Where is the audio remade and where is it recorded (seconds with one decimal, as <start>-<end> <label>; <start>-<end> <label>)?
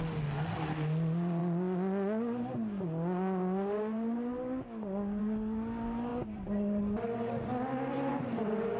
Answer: 0.0-6.1 recorded; 6.1-6.8 remade; 6.8-8.8 recorded